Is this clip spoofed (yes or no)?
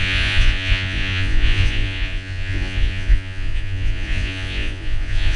yes